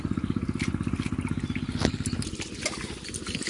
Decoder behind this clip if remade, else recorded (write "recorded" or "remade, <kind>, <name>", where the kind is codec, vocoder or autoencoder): recorded